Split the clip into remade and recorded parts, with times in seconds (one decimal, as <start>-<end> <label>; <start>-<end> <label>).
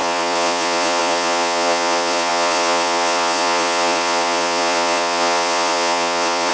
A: 0.0-6.5 remade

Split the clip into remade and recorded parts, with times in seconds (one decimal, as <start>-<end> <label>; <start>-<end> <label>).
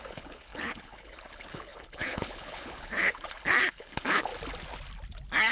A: 0.0-4.3 remade; 4.3-5.5 recorded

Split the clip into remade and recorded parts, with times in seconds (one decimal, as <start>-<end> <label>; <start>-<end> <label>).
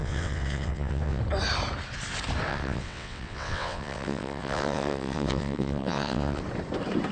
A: 0.0-1.2 remade; 1.2-2.5 recorded; 2.5-6.4 remade; 6.4-7.1 recorded